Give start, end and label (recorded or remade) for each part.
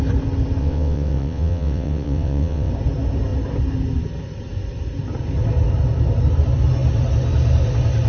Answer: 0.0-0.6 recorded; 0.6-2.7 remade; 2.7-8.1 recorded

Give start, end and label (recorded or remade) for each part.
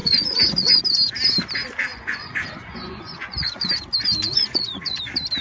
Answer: 0.0-0.8 remade; 0.8-1.9 recorded; 1.9-3.7 remade; 3.7-4.2 recorded; 4.2-5.0 remade; 5.0-5.4 recorded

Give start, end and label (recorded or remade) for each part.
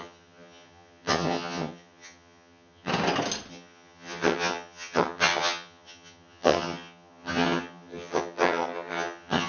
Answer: 0.0-2.9 remade; 2.9-3.5 recorded; 3.5-9.5 remade